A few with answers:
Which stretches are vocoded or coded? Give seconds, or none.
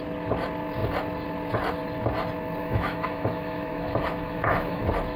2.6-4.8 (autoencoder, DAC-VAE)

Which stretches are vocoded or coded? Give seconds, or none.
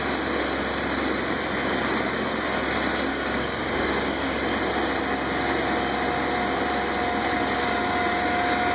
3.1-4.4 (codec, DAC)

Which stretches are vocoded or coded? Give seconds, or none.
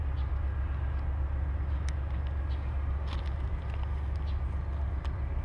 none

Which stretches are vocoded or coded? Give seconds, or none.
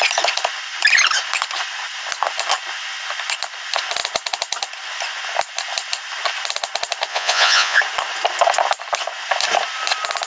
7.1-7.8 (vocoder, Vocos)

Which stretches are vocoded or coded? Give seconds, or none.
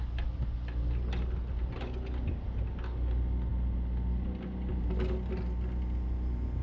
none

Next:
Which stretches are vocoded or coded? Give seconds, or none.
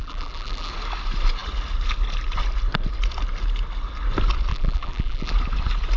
0.0-0.7 (vocoder, BigVGAN v2); 4.5-5.3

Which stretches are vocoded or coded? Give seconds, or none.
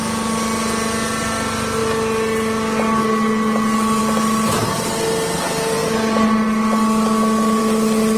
none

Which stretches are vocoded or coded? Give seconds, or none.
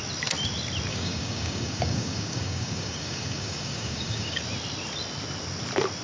0.9-4.4 (codec, DAC)